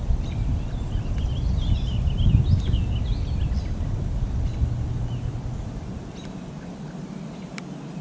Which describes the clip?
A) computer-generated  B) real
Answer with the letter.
B